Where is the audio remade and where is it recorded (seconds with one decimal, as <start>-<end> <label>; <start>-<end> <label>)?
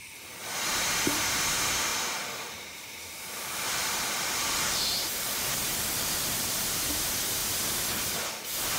0.0-1.9 recorded; 1.9-6.9 remade; 6.9-8.8 recorded